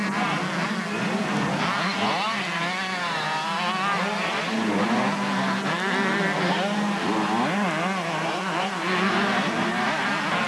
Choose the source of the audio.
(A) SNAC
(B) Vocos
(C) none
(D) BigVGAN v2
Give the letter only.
C